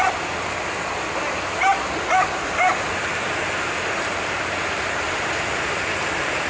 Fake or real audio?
real